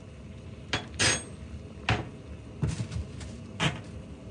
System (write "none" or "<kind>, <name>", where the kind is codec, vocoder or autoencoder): none